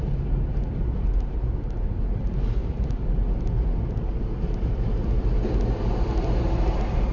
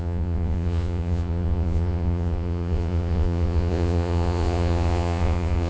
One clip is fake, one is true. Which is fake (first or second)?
second